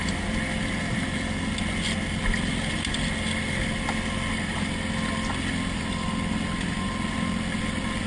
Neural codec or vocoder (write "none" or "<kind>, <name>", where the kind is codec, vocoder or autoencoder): none